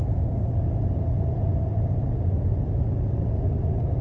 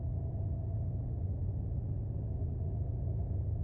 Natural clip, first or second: second